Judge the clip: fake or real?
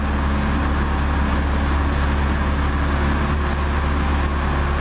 real